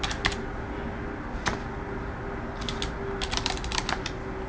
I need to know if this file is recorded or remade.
recorded